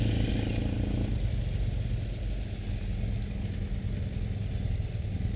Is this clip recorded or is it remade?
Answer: recorded